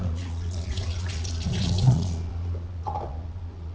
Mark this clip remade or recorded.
remade